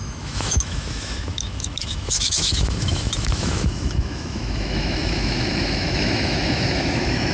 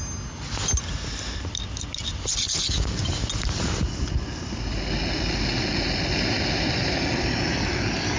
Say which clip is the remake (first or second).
first